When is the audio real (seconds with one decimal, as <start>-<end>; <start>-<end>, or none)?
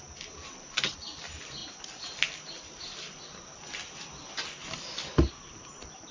0.0-6.1